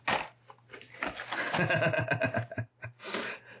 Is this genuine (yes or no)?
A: yes